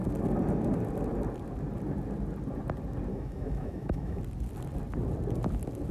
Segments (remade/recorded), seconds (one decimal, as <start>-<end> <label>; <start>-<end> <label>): 0.0-3.1 recorded; 3.1-4.2 remade; 4.2-5.9 recorded